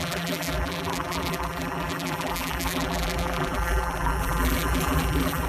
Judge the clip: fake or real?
fake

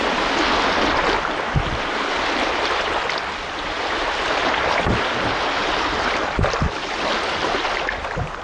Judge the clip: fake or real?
real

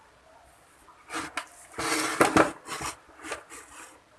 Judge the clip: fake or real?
real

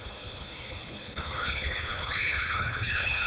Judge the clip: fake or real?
fake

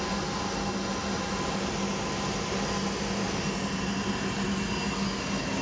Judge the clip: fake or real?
real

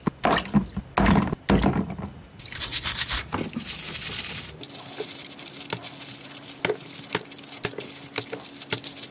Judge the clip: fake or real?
real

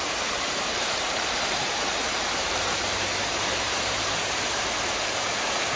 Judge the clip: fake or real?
fake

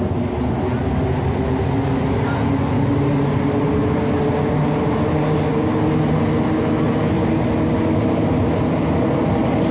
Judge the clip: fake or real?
real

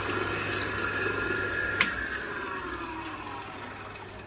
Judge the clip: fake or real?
real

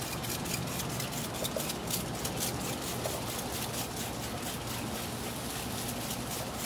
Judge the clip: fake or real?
real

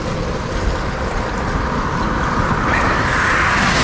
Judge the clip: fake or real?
real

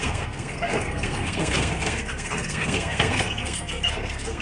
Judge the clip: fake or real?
fake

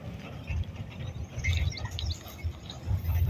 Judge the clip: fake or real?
real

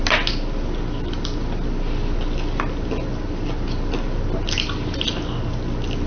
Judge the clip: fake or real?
real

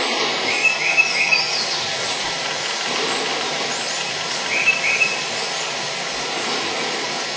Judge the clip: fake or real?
real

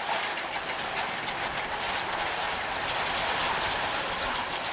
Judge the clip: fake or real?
real